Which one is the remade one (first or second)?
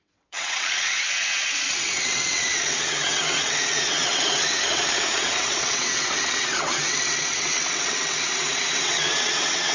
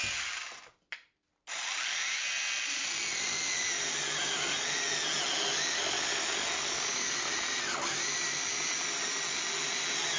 first